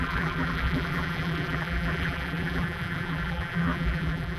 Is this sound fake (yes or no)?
yes